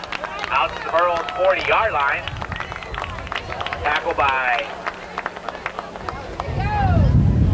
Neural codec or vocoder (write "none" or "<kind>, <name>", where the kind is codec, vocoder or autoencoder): none